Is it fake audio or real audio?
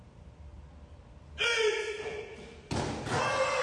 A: real